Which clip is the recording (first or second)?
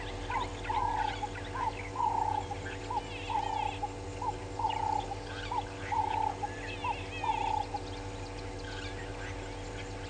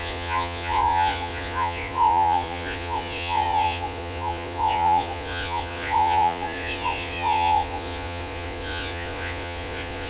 first